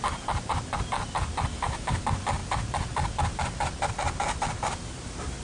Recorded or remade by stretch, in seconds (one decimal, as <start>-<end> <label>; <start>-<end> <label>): 0.0-1.5 recorded; 1.5-2.0 remade; 2.0-5.4 recorded